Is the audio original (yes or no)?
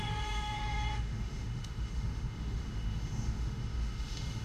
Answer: no